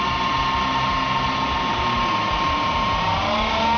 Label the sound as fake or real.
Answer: real